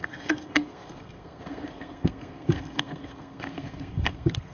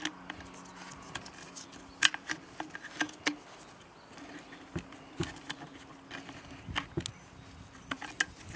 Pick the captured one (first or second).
second